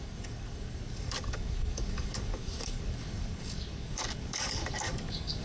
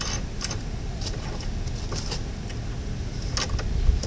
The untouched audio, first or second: second